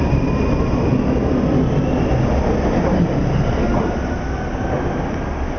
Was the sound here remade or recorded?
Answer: recorded